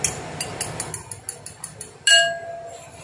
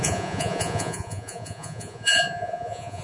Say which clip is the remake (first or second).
second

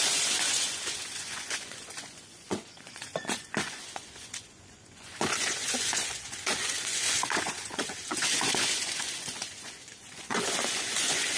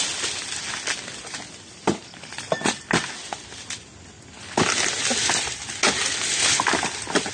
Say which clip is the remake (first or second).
first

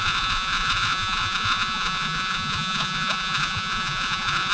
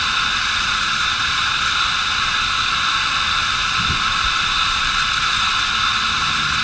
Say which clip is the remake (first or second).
first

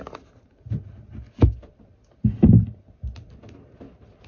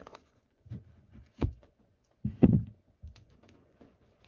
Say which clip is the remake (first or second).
second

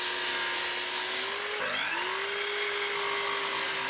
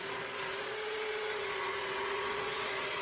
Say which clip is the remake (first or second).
second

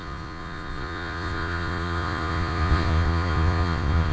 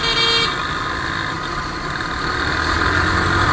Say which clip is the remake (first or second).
first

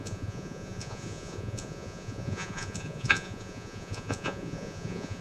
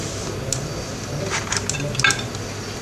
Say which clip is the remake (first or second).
first